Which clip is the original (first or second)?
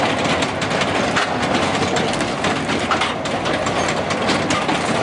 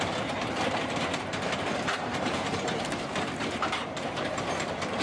first